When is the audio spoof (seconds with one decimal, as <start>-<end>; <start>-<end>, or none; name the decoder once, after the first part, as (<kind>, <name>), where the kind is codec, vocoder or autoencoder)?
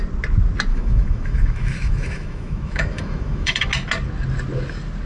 0.7-3.7 (autoencoder, DAC-VAE)